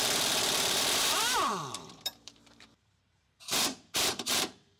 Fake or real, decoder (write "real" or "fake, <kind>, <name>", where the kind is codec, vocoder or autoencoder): fake, vocoder, BigVGAN v2